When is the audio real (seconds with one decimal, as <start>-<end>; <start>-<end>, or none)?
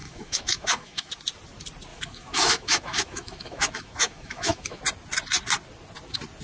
1.1-1.9; 4.8-6.4